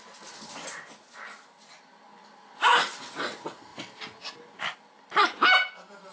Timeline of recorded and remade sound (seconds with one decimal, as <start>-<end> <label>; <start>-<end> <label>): 0.0-6.1 recorded